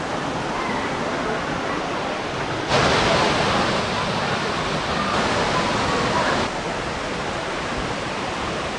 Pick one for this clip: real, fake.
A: real